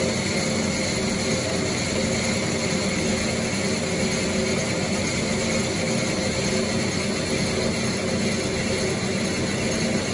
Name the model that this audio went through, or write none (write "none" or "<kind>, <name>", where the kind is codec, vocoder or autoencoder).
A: none